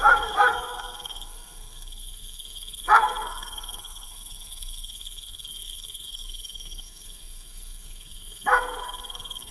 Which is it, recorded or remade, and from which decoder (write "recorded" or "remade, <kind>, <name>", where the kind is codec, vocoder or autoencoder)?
remade, codec, SNAC